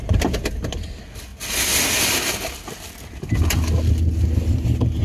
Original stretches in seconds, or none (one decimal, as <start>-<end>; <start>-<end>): 0.0-5.0